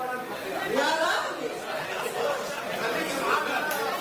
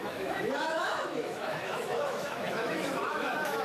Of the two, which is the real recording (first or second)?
first